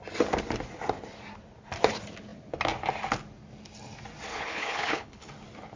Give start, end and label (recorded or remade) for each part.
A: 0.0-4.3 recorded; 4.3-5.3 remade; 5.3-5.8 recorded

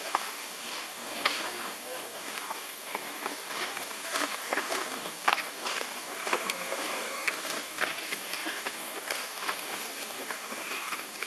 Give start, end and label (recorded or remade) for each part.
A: 0.0-11.3 remade